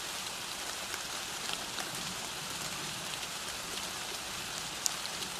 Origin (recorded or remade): recorded